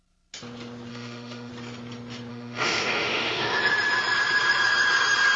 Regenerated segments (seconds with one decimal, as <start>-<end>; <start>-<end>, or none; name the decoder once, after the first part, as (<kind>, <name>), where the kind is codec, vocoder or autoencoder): 0.9-1.5 (autoencoder, DAC-VAE); 2.3-3.6